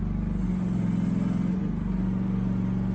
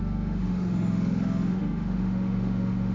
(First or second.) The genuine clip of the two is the first